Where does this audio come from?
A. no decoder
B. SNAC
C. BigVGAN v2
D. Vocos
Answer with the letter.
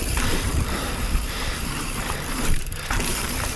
C